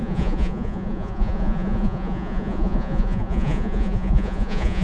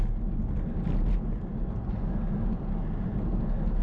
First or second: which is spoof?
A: first